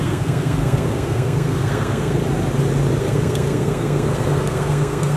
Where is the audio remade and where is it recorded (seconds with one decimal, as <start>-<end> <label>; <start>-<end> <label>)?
0.0-2.2 remade; 2.2-3.0 recorded; 3.0-5.2 remade